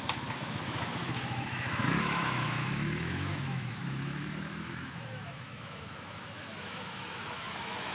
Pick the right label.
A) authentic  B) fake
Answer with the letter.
B